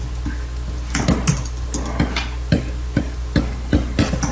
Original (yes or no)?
yes